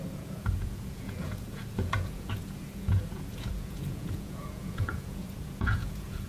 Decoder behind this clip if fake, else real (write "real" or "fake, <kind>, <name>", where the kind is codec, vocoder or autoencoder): fake, vocoder, Vocos